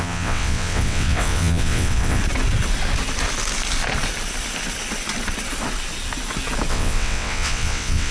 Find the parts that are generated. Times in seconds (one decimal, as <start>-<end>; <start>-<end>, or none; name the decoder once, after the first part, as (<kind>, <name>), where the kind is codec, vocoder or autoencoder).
0.0-2.2 (vocoder, WaveNeXt); 6.7-8.1